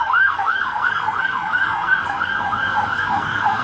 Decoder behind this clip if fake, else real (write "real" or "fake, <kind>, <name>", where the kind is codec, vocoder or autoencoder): fake, codec, SNAC